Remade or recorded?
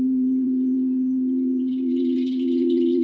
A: remade